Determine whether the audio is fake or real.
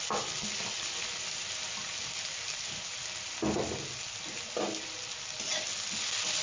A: real